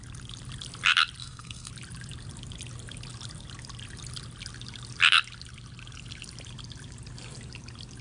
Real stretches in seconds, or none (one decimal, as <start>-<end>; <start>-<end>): 0.0-1.2; 1.7-8.0